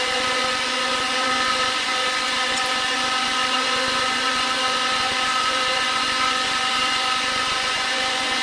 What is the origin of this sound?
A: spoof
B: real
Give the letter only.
A